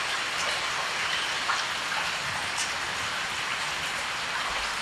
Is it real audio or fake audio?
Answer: real